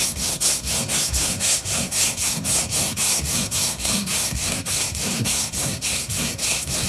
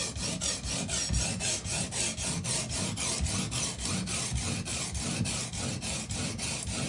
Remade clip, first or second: first